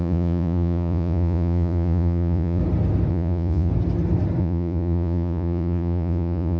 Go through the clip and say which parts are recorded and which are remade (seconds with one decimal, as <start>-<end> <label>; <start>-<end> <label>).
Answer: 0.0-2.6 remade; 2.6-3.1 recorded; 3.1-3.7 remade; 3.7-4.4 recorded; 4.4-6.6 remade